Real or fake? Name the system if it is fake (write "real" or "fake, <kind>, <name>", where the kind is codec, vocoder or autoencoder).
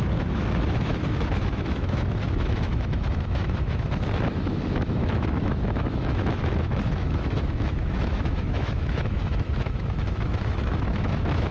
fake, autoencoder, DAC-VAE